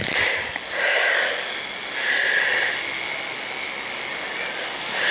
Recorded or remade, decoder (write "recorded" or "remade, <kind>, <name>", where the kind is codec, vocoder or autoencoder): recorded